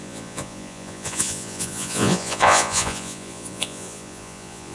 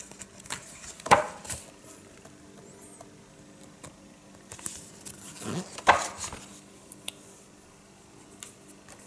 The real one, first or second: second